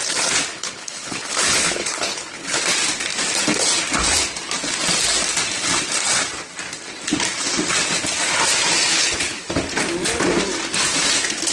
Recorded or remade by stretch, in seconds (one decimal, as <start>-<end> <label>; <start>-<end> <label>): 0.0-0.5 recorded; 0.5-2.6 remade; 2.6-8.9 recorded; 8.9-9.4 remade; 9.4-11.5 recorded